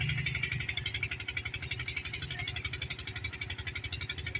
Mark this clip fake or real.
real